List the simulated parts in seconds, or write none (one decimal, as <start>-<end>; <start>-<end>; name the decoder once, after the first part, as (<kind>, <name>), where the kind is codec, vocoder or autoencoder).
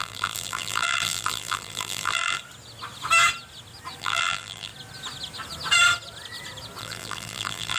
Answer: 0.0-2.4 (vocoder, BigVGAN v2); 4.0-4.7; 6.8-7.8